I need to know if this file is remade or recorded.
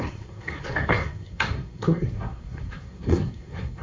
remade